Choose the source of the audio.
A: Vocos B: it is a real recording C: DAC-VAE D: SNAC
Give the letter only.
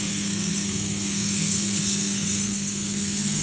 D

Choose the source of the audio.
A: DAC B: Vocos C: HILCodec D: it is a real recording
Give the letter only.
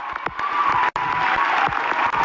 D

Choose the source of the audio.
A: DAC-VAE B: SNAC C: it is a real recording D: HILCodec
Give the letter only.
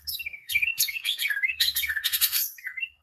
B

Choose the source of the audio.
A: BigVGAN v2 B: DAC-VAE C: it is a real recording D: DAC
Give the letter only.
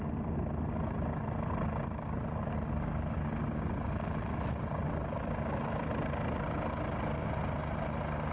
C